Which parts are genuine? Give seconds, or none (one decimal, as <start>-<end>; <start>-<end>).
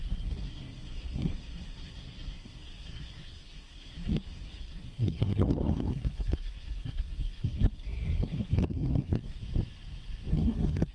9.4-10.3